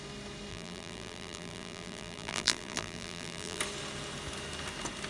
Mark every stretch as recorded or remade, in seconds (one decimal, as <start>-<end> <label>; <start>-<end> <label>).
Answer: 0.0-0.5 recorded; 0.5-3.6 remade; 3.6-5.1 recorded